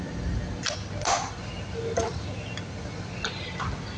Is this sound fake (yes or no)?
no